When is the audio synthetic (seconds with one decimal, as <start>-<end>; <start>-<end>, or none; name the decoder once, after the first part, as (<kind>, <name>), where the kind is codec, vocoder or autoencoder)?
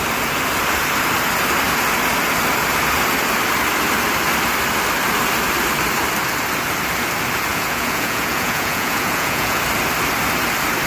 7.5-9.6 (vocoder, Vocos)